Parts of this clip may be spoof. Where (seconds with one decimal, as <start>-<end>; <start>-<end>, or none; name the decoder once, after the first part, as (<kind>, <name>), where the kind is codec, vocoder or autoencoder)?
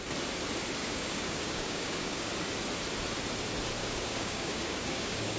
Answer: 0.8-2.3 (codec, DAC); 3.8-5.4